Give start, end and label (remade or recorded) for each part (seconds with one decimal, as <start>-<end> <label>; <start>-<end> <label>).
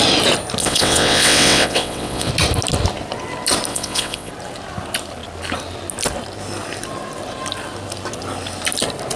0.0-0.6 recorded; 0.6-2.3 remade; 2.3-3.7 recorded; 3.7-4.3 remade; 4.3-9.2 recorded